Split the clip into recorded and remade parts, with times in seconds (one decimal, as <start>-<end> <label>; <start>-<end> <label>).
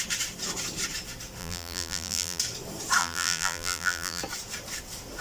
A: 0.0-1.4 recorded; 1.4-2.4 remade; 2.4-3.0 recorded; 3.0-4.2 remade; 4.2-5.2 recorded